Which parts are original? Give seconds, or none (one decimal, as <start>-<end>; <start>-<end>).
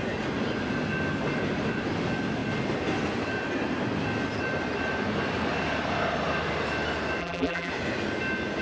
0.0-7.2; 7.7-8.6